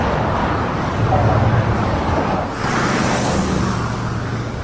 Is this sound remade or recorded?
remade